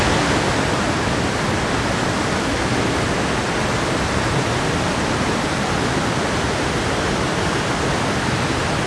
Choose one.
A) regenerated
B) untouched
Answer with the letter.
B